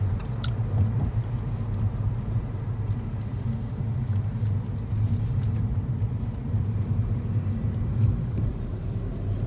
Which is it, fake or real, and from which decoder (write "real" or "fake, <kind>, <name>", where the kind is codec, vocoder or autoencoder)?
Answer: fake, vocoder, BigVGAN v2